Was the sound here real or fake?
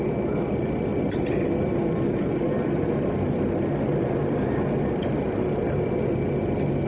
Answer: real